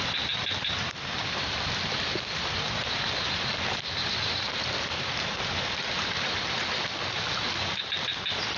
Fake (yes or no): yes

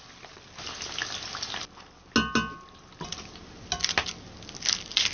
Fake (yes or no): no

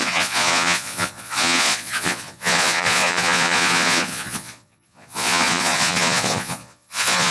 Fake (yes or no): yes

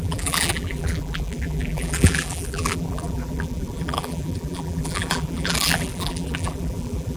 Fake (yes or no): yes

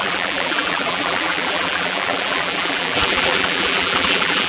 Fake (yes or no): yes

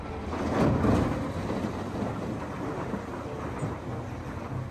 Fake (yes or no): no